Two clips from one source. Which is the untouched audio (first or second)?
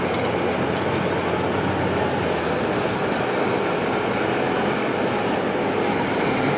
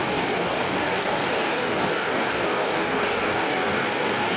first